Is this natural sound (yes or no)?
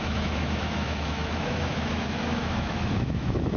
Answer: no